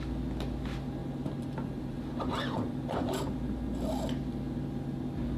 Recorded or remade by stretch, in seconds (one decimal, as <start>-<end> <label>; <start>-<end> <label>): 0.0-5.4 recorded